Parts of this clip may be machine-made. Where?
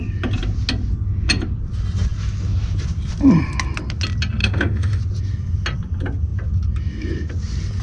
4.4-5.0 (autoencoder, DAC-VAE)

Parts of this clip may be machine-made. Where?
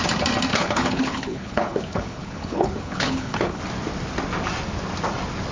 0.5-3.6 (codec, HILCodec)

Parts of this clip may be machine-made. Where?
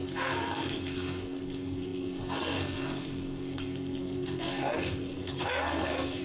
0.0-6.2 (codec, SNAC)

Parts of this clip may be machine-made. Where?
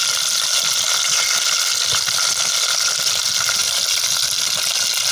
none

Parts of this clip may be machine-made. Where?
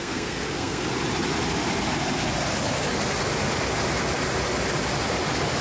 0.0-0.9 (codec, SNAC)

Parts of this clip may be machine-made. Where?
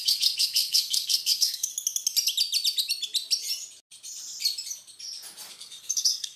0.0-1.7 (codec, SNAC); 5.5-6.4